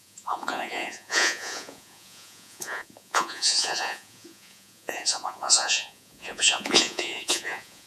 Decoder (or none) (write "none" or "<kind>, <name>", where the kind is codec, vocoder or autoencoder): vocoder, Vocos